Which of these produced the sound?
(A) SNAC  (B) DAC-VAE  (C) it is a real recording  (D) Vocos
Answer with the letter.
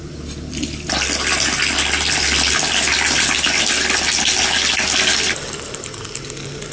C